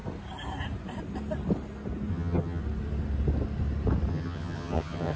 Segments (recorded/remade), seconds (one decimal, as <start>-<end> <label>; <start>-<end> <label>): 0.0-2.1 recorded; 2.1-2.6 remade; 2.6-4.1 recorded; 4.1-5.2 remade